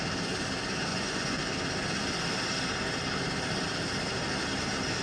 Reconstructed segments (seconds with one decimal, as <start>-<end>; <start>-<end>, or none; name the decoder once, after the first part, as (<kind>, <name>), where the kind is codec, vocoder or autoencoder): 0.9-1.4 (vocoder, Vocos)